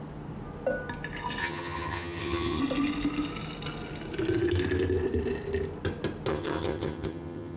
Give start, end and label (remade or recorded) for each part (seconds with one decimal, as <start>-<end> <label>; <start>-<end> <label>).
0.0-1.4 recorded; 1.4-2.6 remade; 2.6-6.3 recorded; 6.3-7.6 remade